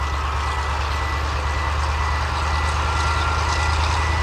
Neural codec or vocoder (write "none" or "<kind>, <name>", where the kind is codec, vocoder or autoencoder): none